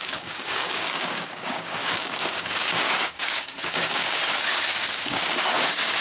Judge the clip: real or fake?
fake